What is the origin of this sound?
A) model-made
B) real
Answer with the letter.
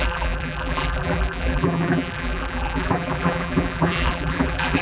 A